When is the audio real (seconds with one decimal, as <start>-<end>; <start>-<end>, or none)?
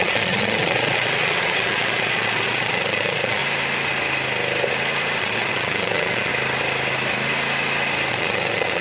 3.4-5.2; 6.3-8.1